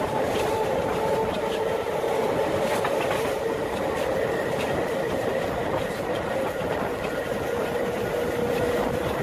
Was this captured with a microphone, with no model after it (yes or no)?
yes